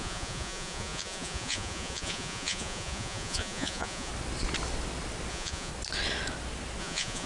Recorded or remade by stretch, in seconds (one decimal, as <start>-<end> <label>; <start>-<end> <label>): 0.0-4.1 remade; 4.1-5.3 recorded; 5.3-5.7 remade; 5.7-6.8 recorded; 6.8-7.3 remade

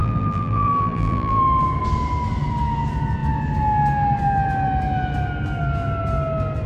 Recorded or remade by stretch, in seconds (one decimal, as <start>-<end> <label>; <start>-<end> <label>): 0.0-1.4 remade; 1.4-6.7 recorded

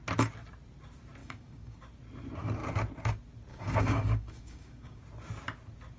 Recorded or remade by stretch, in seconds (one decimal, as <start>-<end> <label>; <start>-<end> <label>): 0.0-1.2 recorded; 1.2-1.8 remade; 1.8-3.5 recorded; 3.5-5.0 remade; 5.0-6.0 recorded

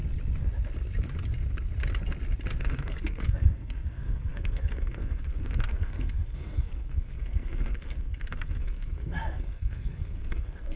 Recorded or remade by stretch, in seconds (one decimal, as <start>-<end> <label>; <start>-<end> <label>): 0.0-2.6 recorded; 2.6-10.8 remade

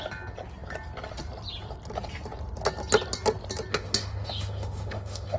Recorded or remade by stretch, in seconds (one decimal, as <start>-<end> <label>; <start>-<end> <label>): 0.0-3.7 recorded; 3.7-5.4 remade

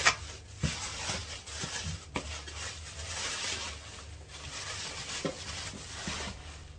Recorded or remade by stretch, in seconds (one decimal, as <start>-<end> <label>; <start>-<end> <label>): 0.0-6.8 recorded